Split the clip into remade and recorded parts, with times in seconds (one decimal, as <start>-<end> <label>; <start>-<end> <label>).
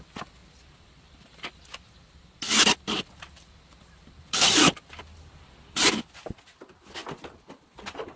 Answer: 0.0-0.4 recorded; 0.4-5.0 remade; 5.0-7.0 recorded; 7.0-8.2 remade